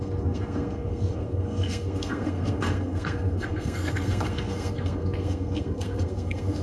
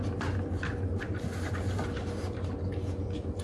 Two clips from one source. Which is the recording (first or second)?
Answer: second